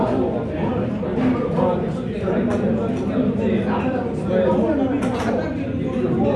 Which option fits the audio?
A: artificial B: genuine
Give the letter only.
B